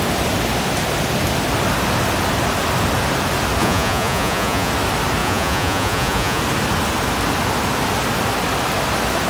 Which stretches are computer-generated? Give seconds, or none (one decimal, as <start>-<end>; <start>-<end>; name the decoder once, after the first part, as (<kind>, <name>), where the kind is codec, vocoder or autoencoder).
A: 3.6-4.7 (vocoder, Vocos); 5.2-6.4